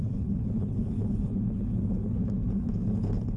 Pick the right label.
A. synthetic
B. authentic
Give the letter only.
A